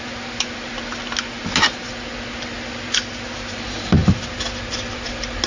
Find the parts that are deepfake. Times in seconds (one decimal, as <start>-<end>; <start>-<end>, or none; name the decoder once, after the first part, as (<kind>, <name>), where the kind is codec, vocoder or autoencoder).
none